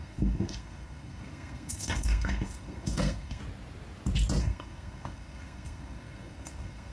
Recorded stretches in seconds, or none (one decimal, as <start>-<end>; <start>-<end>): 3.4-4.4

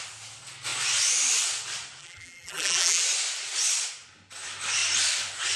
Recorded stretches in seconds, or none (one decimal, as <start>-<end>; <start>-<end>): 0.0-2.0; 3.0-5.6

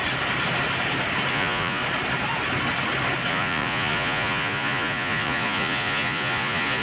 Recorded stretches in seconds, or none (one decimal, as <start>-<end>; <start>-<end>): 0.0-1.3; 1.8-3.3

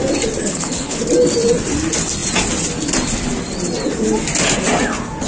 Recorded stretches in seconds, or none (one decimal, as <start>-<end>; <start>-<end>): 0.0-0.5; 1.0-5.3